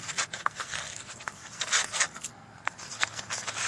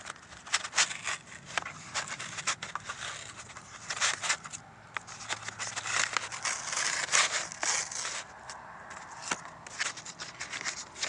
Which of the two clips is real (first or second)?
second